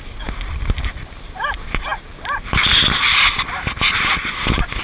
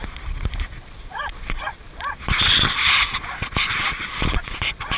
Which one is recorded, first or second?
first